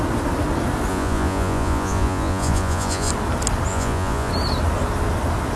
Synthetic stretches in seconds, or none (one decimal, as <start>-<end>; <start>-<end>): 0.9-3.1; 3.7-4.3